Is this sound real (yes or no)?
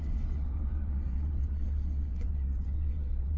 no